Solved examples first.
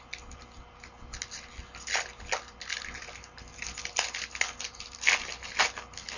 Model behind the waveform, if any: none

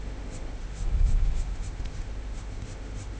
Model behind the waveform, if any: autoencoder, DAC-VAE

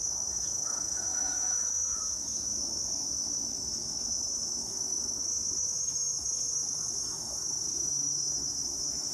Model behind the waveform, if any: autoencoder, DAC-VAE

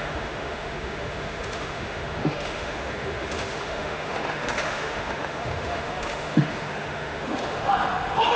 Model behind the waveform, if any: autoencoder, DAC-VAE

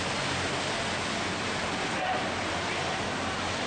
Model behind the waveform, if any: none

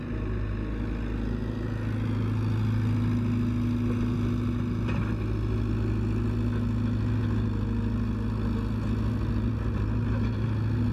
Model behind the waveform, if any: none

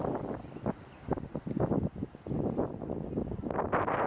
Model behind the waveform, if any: none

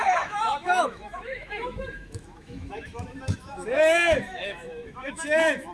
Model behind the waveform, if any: autoencoder, DAC-VAE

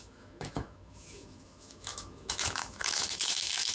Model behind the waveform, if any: autoencoder, DAC-VAE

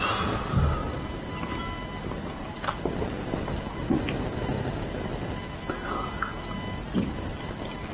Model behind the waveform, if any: none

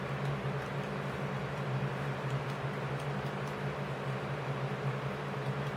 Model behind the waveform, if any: none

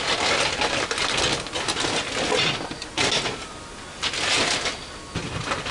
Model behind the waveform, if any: none